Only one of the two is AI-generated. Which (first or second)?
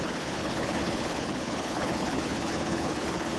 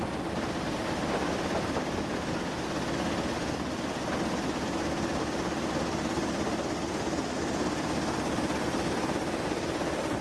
first